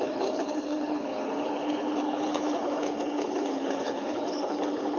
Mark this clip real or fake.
fake